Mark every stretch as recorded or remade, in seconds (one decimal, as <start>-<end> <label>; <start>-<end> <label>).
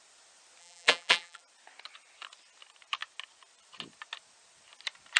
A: 0.0-0.6 recorded; 0.6-1.4 remade; 1.4-5.2 recorded